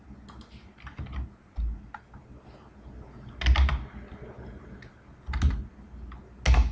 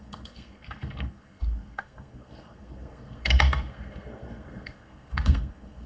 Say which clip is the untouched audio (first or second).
first